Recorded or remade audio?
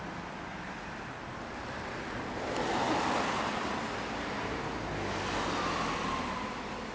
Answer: recorded